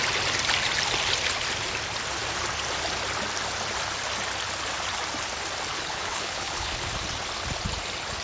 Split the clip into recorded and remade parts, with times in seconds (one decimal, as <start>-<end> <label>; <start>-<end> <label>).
0.0-5.7 recorded; 5.7-6.9 remade; 6.9-8.2 recorded

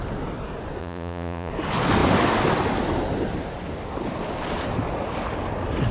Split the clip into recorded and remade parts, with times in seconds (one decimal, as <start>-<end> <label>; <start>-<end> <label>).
0.0-0.8 recorded; 0.8-1.5 remade; 1.5-5.9 recorded

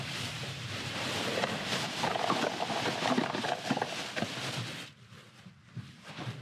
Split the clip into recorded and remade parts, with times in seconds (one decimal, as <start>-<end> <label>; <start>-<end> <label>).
0.0-2.1 remade; 2.1-5.8 recorded; 5.8-6.4 remade

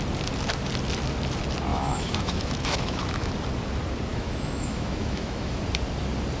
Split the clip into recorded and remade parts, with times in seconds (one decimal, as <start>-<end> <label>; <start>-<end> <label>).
0.0-1.7 recorded; 1.7-3.3 remade; 3.3-4.1 recorded; 4.1-5.6 remade; 5.6-6.4 recorded